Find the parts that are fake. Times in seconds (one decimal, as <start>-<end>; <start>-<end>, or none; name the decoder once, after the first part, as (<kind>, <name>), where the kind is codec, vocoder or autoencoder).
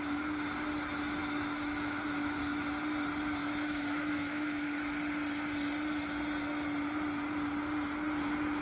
1.2-2.4 (autoencoder, DAC-VAE); 3.4-4.8